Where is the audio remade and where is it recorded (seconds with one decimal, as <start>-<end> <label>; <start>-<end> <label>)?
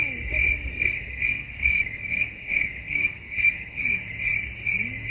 0.0-0.7 recorded; 0.7-3.8 remade; 3.8-5.1 recorded